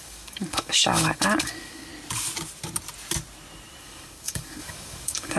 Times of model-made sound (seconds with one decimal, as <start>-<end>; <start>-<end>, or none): 0.0-1.9; 3.8-5.4